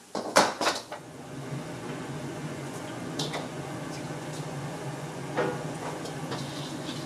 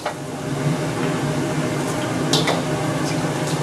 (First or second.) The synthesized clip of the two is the first